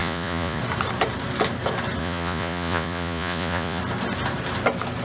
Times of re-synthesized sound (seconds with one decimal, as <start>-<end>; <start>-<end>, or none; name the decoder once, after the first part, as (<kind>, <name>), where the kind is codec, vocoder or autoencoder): 0.0-0.6 (vocoder, Vocos); 2.0-3.8